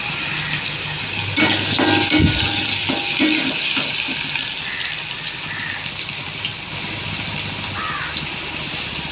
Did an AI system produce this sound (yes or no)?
no